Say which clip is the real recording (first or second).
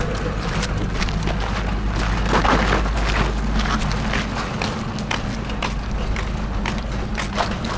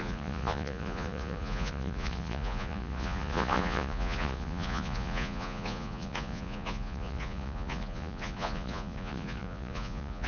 first